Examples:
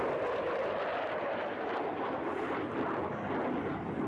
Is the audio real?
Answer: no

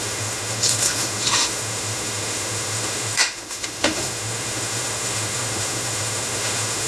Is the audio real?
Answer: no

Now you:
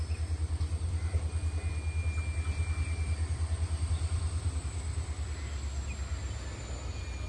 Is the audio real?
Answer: yes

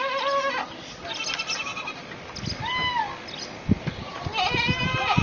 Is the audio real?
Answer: yes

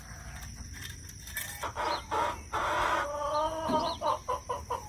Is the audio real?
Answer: yes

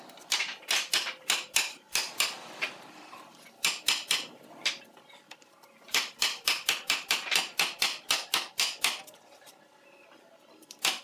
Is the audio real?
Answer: no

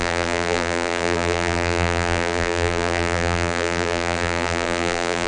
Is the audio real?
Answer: no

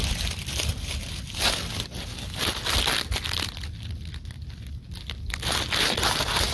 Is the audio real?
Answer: yes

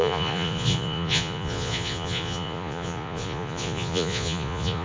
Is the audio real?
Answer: no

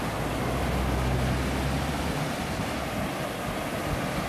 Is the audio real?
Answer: yes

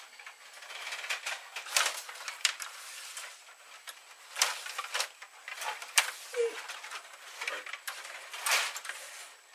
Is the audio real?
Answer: yes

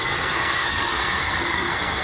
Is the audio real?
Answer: no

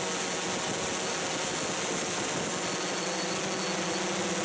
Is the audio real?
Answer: yes